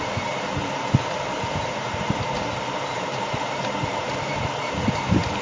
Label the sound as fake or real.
fake